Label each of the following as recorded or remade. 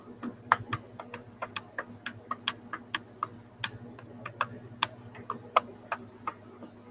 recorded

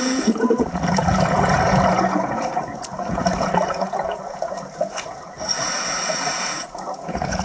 remade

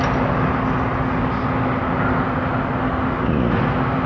recorded